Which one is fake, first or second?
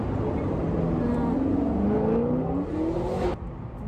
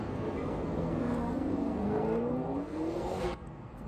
second